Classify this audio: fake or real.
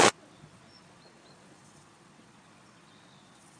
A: fake